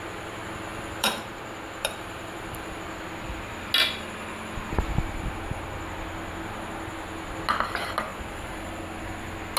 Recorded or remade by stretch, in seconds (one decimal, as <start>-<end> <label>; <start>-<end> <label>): 0.0-0.7 recorded; 0.7-2.7 remade; 2.7-8.1 recorded; 8.1-8.8 remade; 8.8-9.6 recorded